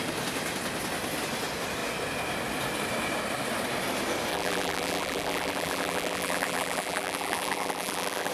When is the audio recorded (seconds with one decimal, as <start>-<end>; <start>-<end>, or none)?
0.0-4.3